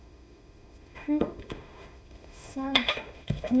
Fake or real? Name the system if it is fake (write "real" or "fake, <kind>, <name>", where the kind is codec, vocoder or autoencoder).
fake, autoencoder, DAC-VAE